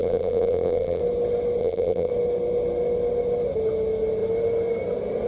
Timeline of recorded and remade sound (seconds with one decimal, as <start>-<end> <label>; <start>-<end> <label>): 0.0-1.0 remade; 1.0-1.6 recorded; 1.6-2.1 remade; 2.1-5.3 recorded